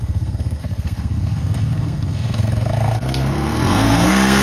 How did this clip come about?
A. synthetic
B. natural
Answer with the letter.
A